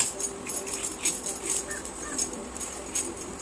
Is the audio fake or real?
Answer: fake